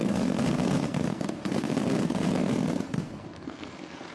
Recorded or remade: remade